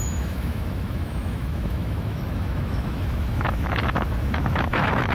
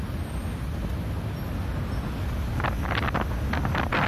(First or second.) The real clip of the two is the second